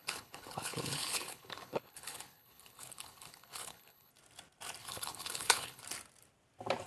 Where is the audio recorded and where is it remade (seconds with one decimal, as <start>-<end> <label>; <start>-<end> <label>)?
0.0-4.1 remade; 4.1-4.8 recorded; 4.8-5.8 remade; 5.8-6.9 recorded